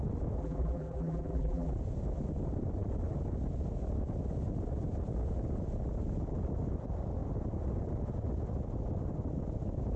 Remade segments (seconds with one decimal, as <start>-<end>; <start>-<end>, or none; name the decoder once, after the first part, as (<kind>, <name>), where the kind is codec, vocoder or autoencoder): 0.4-1.7 (vocoder, BigVGAN v2)